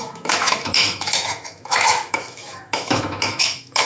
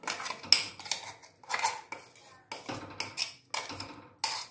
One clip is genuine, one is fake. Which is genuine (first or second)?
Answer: second